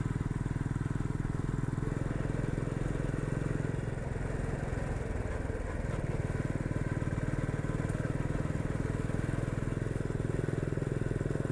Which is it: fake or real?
real